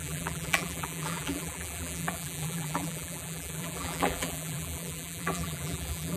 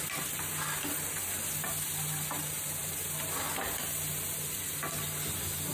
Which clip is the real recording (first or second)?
second